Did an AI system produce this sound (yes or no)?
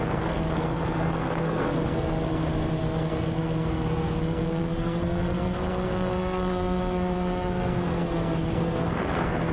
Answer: yes